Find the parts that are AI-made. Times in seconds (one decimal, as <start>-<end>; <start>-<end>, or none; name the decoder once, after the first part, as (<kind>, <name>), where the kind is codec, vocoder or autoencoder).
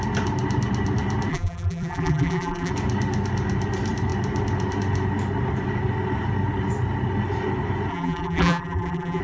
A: 1.3-2.7 (vocoder, BigVGAN v2); 7.9-9.2